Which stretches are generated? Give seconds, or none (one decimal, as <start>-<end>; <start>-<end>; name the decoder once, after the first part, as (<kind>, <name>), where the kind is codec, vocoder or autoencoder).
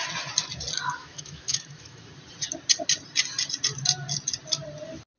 1.0-2.1 (autoencoder, DAC-VAE)